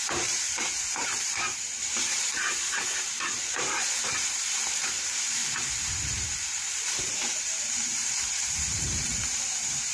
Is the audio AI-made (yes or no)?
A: yes